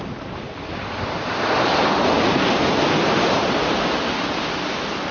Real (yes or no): no